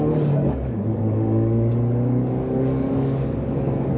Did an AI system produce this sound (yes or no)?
yes